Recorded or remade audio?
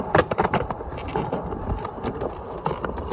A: remade